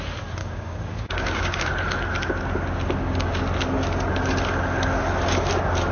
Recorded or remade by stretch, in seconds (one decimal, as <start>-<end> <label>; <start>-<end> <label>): 0.0-0.4 recorded; 0.4-1.7 remade; 1.7-5.9 recorded